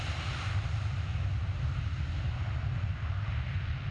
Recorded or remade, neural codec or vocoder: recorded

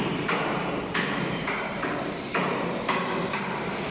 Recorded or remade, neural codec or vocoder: remade, vocoder, BigVGAN v2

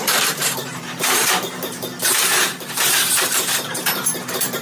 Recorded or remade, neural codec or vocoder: remade, vocoder, BigVGAN v2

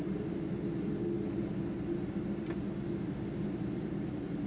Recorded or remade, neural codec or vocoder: recorded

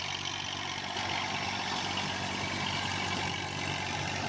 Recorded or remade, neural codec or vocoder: recorded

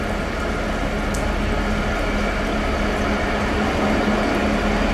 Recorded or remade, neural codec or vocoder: recorded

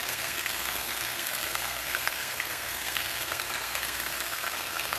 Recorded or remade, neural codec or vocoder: remade, codec, SNAC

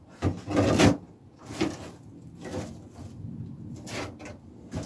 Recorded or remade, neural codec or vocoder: recorded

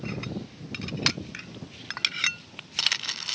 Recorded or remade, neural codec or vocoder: recorded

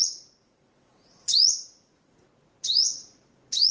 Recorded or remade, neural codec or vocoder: remade, vocoder, Vocos